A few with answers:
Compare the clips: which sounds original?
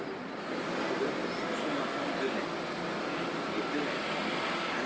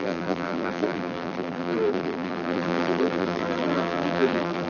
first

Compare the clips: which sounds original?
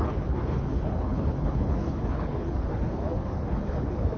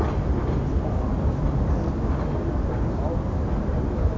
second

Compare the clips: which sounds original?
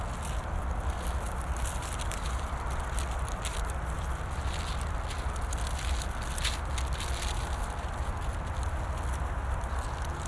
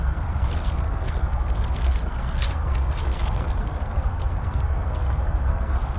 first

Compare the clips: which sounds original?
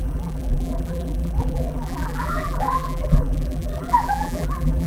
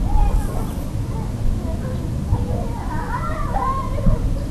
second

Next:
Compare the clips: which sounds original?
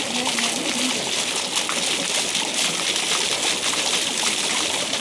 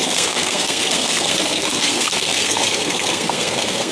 first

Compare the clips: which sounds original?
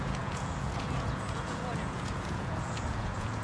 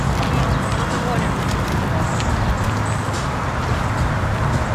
second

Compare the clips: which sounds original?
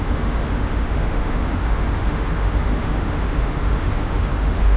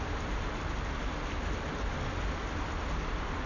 second